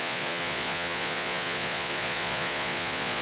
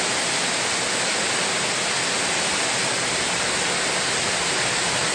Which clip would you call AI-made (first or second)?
first